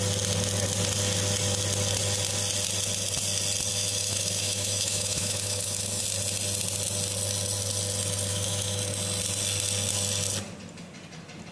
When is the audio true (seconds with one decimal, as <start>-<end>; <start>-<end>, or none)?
0.0-3.7; 6.0-8.3; 8.8-11.5